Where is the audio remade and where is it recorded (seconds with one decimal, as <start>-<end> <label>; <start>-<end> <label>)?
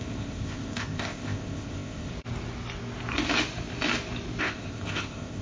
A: 0.0-2.1 remade; 2.1-4.4 recorded; 4.4-5.4 remade